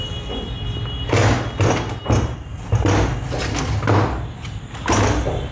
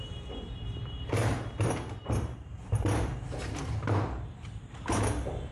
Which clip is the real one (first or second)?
first